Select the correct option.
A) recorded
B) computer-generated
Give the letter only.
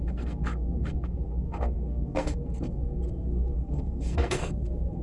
B